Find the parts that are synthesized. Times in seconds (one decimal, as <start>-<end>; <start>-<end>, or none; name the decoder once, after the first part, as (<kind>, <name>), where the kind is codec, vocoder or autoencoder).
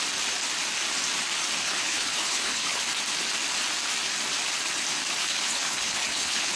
1.6-2.8 (codec, HILCodec); 5.2-6.6